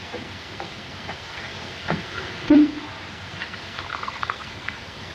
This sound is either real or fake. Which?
fake